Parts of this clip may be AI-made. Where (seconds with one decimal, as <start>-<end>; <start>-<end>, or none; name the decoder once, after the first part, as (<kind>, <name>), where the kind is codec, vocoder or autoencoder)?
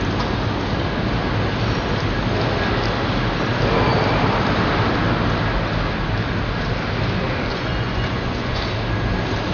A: 7.5-8.6 (vocoder, Vocos)